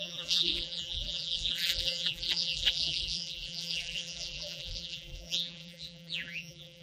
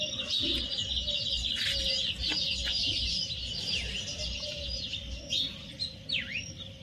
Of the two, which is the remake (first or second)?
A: first